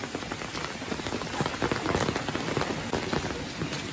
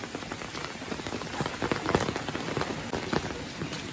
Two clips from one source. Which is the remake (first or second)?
second